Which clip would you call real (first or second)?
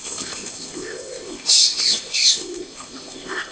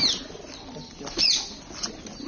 second